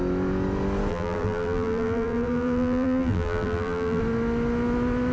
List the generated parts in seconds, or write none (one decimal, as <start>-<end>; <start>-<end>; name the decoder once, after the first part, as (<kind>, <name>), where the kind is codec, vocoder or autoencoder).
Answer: 0.9-4.0 (vocoder, BigVGAN v2)